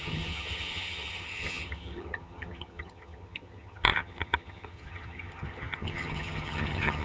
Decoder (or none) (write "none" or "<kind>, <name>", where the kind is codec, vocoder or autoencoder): vocoder, HiFi-GAN